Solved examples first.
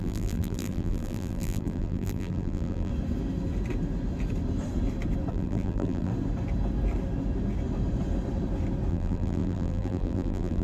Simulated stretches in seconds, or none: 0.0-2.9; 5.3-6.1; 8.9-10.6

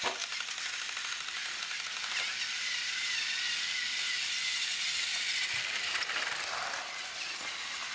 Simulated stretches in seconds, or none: 0.0-7.9